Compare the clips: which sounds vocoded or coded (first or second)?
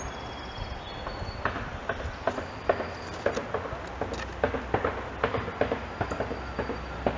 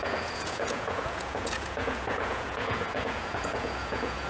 second